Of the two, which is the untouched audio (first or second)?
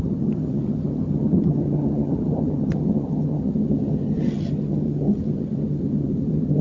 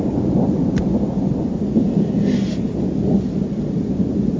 second